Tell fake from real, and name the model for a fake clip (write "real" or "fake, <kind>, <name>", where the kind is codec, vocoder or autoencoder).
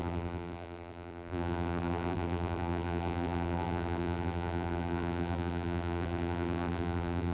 fake, vocoder, BigVGAN v2